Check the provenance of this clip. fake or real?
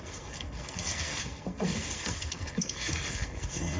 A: fake